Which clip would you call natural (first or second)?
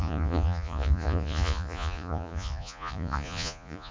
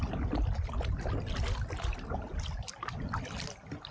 second